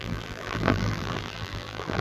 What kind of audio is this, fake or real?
fake